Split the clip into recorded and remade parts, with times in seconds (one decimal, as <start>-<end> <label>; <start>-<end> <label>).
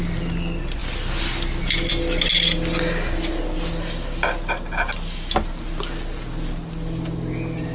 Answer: 0.0-7.7 recorded